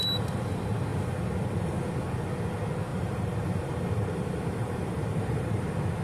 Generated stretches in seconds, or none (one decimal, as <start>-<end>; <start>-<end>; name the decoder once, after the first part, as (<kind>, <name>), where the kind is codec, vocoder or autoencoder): 2.9-5.5 (vocoder, BigVGAN v2)